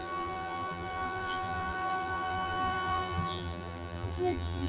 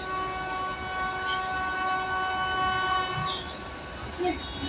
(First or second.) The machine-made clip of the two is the first